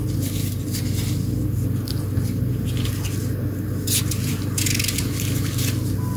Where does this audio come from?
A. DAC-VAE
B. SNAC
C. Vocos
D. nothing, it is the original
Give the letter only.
D